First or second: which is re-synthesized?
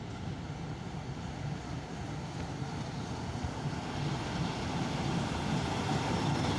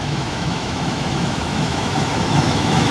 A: second